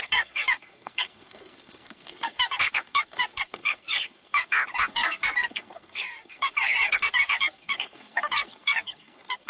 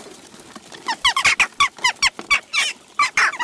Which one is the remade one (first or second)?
first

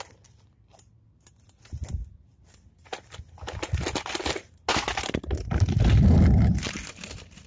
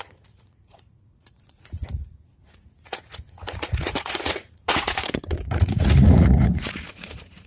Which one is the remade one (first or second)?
second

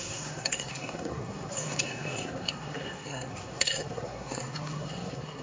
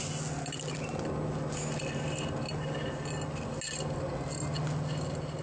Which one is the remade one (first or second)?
first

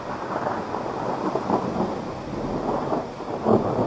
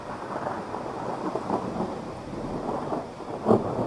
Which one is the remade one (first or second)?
second